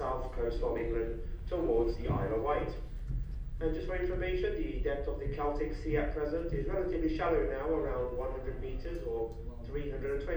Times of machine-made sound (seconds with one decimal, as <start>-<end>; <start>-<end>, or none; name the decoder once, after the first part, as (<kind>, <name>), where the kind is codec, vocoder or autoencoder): 1.3-2.9 (autoencoder, DAC-VAE); 7.7-9.5